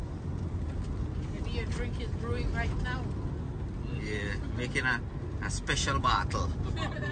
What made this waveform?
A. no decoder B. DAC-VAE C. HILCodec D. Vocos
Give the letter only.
A